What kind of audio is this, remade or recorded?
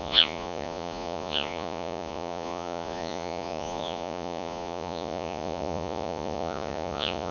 remade